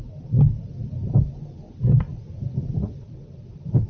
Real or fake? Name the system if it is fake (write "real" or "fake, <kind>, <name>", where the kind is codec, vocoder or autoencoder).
real